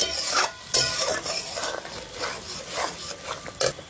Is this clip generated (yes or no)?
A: no